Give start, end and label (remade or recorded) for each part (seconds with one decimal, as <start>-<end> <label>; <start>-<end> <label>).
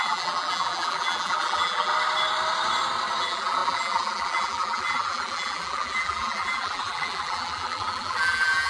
0.0-1.9 remade; 1.9-3.2 recorded; 3.2-8.7 remade